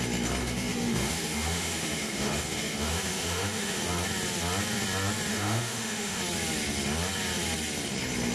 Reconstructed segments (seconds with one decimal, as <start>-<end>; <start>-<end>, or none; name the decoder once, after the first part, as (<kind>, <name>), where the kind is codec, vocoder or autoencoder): 0.4-3.8 (autoencoder, DAC-VAE); 5.3-6.2